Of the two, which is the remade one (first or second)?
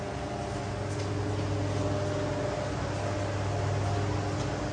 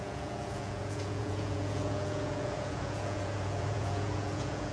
second